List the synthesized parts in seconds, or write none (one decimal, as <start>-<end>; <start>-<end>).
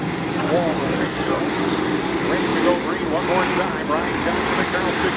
0.8-1.4